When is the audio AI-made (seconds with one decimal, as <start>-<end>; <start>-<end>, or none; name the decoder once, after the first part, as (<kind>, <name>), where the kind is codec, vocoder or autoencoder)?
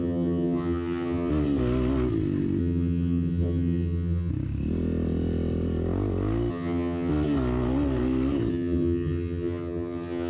0.0-1.3 (vocoder, HiFi-GAN); 2.6-4.3; 6.5-7.1; 8.5-10.3